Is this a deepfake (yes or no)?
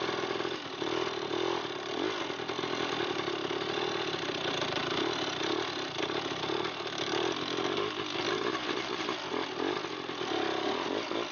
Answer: no